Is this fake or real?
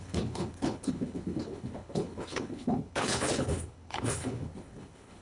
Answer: fake